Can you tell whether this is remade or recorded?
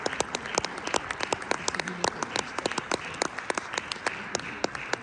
recorded